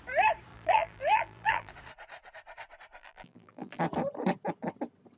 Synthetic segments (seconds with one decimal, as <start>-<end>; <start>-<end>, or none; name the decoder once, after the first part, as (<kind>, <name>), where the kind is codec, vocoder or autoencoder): 0.5-1.7 (vocoder, BigVGAN v2); 3.0-3.8